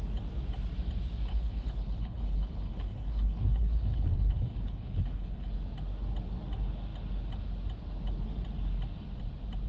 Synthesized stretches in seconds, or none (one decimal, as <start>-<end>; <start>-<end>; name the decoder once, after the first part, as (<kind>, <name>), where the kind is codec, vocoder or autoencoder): 1.3-5.5 (codec, HILCodec)